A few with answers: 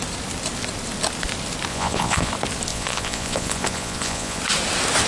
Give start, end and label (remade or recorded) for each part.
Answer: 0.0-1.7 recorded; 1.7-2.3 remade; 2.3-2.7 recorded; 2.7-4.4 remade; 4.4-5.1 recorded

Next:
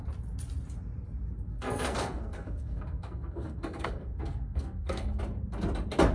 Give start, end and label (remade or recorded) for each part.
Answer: 0.0-1.5 recorded; 1.5-5.2 remade; 5.2-6.1 recorded

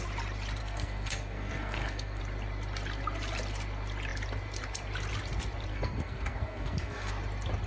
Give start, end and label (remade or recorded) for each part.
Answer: 0.0-0.6 recorded; 0.6-2.2 remade; 2.2-5.7 recorded; 5.7-7.1 remade; 7.1-7.7 recorded

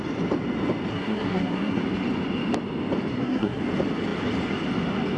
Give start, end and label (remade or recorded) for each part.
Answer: 0.0-0.9 recorded; 0.9-1.8 remade; 1.8-3.1 recorded; 3.1-3.6 remade; 3.6-5.2 recorded

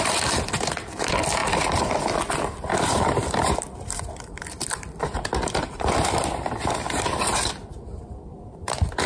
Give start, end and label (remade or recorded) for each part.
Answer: 0.0-1.4 remade; 1.4-2.0 recorded; 2.0-9.1 remade

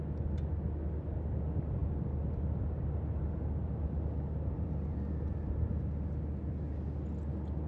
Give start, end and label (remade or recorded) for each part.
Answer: 0.0-7.7 recorded